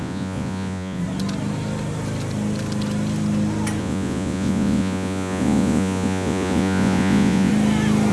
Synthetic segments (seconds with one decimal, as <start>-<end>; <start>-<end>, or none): 0.0-1.0; 3.8-7.5